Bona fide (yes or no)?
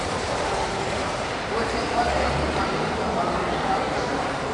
no